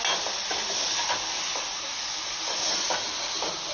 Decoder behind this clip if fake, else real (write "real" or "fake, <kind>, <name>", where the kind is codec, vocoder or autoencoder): real